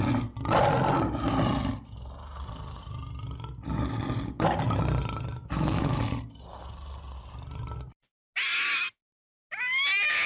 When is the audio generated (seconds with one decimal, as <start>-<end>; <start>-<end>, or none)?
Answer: 5.4-6.0